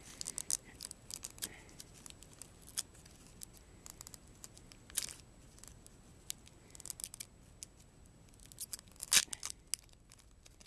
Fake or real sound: real